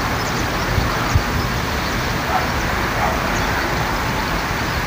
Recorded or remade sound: recorded